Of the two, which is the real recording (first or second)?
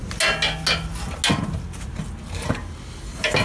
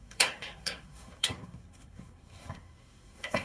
first